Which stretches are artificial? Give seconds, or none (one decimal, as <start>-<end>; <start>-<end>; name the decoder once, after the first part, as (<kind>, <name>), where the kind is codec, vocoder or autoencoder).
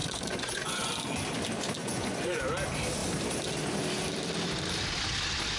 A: 0.0-0.9 (vocoder, Vocos); 1.8-2.4